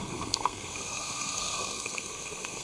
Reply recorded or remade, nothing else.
remade